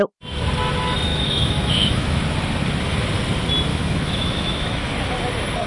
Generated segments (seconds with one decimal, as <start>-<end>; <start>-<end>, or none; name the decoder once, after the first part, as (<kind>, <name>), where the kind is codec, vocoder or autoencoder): 1.1-2.2 (autoencoder, DAC-VAE); 3.7-4.9